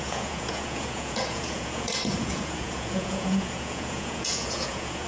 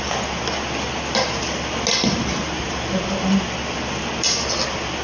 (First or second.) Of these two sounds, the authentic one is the second